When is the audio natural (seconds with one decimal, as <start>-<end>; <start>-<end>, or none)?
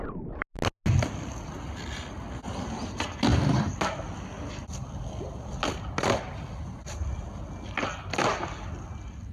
0.0-9.3